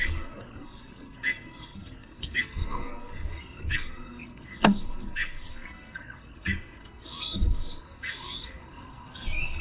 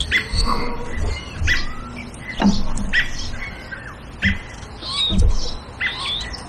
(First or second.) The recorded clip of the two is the second